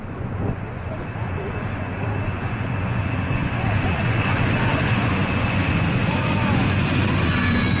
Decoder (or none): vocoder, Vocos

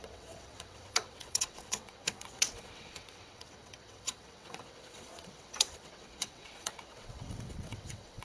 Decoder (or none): vocoder, WaveNeXt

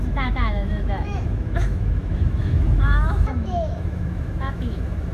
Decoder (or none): autoencoder, DAC-VAE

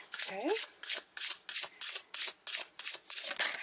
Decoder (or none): none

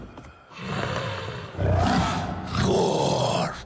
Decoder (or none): none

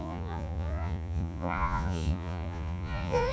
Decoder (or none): vocoder, Vocos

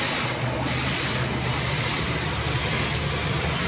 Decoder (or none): none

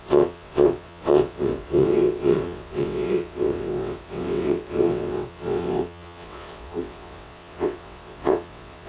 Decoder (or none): vocoder, WaveNeXt